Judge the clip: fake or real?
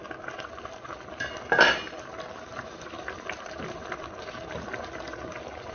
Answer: real